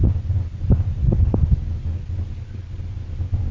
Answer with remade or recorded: recorded